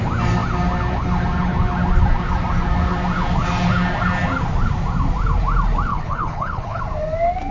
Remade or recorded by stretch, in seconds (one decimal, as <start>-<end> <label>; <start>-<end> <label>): 0.0-5.9 recorded; 5.9-6.8 remade; 6.8-7.5 recorded